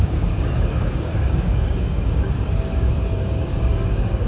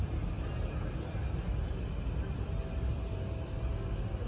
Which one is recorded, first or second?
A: second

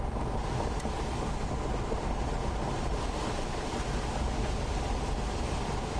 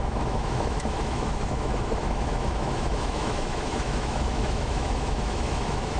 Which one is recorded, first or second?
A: first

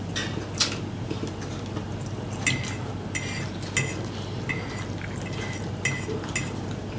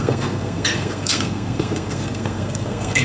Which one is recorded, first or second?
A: first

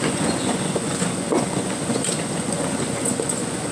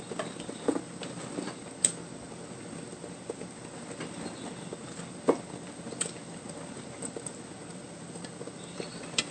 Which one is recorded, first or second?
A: second